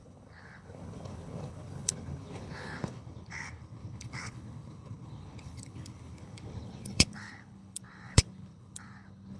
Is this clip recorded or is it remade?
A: remade